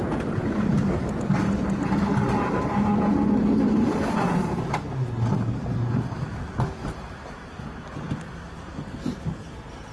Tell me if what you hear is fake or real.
real